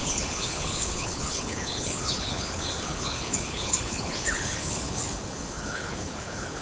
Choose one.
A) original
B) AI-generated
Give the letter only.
B